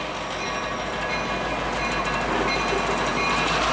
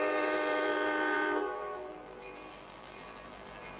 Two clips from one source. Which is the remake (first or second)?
second